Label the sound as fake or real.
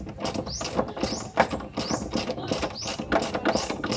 real